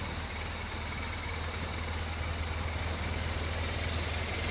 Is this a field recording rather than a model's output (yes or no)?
yes